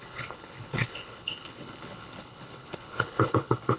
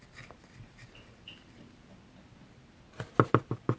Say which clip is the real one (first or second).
second